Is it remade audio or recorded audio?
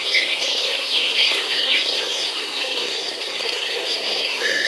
remade